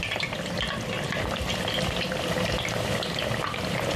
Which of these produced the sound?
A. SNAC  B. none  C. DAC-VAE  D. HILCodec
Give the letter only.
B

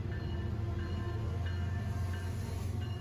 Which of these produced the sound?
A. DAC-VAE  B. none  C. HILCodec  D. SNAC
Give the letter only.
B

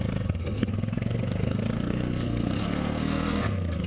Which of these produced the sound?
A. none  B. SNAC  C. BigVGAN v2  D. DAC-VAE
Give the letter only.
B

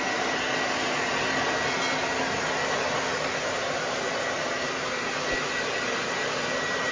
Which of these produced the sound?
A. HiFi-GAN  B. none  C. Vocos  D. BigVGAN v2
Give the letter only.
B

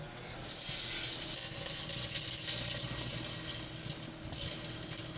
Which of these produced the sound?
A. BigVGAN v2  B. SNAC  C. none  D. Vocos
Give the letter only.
C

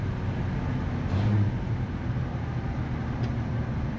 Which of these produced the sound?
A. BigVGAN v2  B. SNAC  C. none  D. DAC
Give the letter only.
C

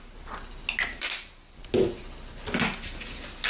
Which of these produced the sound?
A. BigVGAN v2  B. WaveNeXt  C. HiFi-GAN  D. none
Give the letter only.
D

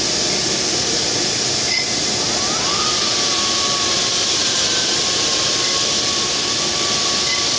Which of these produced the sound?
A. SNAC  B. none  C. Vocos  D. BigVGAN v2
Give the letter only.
B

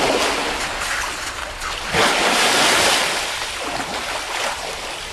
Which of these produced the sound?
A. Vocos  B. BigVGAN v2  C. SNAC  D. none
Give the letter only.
D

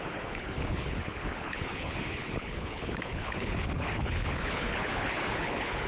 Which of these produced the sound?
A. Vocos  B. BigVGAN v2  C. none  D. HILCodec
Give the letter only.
D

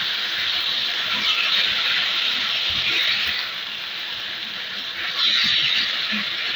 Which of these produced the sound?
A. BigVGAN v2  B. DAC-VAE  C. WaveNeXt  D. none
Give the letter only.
D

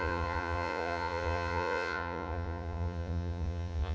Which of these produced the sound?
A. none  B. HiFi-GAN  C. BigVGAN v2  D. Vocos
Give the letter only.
D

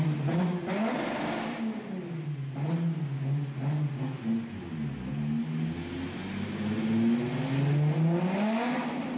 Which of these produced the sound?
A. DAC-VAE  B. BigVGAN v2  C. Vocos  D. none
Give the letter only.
D